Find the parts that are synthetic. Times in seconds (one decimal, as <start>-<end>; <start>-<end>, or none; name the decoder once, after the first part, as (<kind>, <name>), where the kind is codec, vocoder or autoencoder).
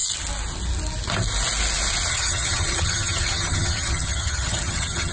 2.1-5.1 (vocoder, HiFi-GAN)